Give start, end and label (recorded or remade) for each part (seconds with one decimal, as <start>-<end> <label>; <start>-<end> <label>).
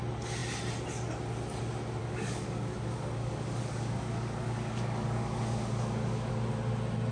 0.0-2.0 recorded; 2.0-6.3 remade; 6.3-7.1 recorded